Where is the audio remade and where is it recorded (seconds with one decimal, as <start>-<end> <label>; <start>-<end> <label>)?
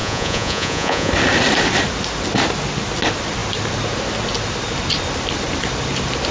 0.0-1.1 remade; 1.1-6.3 recorded